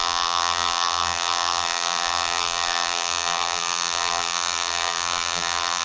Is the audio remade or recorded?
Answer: remade